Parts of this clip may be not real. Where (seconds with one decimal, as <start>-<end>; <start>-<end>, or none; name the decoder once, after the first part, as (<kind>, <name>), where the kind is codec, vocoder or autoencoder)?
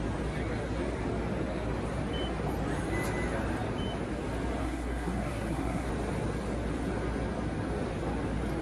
4.6-5.9 (codec, SNAC)